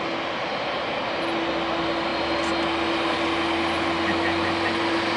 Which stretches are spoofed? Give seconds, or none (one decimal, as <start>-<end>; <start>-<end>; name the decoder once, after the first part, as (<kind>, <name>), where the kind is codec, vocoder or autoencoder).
none